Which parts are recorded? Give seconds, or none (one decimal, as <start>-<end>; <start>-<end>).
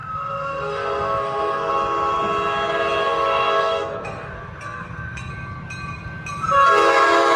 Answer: 1.7-3.0; 5.3-7.4